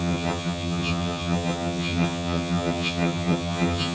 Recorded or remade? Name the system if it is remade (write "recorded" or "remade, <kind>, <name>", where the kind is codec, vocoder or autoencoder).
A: remade, vocoder, HiFi-GAN